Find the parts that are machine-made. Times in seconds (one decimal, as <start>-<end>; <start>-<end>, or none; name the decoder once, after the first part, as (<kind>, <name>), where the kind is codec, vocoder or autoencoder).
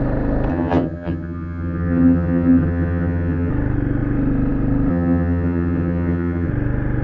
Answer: 0.5-3.5 (vocoder, HiFi-GAN); 4.9-6.5